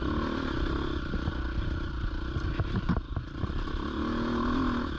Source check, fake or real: real